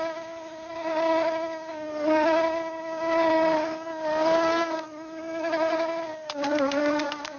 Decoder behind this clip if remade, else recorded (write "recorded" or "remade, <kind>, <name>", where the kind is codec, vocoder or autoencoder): remade, codec, DAC